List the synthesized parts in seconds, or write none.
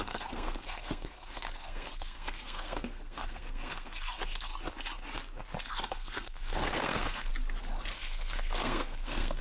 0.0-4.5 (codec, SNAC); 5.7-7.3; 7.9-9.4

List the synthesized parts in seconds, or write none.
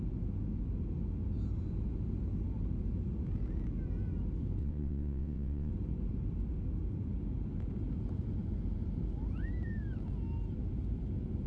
4.6-5.7 (vocoder, WaveNeXt)